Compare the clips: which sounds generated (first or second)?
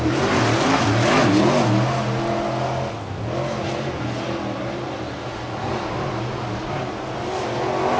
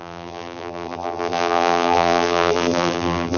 second